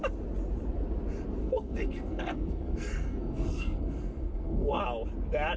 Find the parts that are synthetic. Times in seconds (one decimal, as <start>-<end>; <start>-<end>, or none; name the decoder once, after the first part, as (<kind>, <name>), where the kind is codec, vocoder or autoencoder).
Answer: 1.4-4.8 (codec, SNAC)